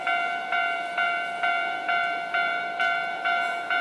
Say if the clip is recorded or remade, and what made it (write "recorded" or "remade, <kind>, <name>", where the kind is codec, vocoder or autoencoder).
remade, vocoder, BigVGAN v2